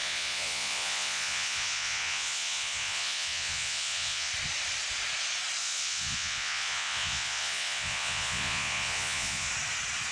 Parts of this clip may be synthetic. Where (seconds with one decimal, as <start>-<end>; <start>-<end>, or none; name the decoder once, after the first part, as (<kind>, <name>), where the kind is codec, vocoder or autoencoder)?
0.0-4.3 (vocoder, Vocos); 5.6-9.5